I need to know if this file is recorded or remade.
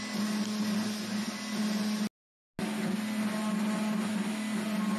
recorded